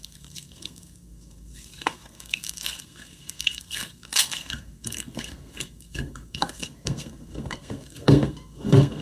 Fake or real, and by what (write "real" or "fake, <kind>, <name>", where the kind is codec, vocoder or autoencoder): fake, codec, SNAC